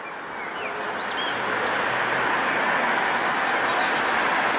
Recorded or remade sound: recorded